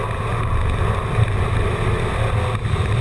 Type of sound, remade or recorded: recorded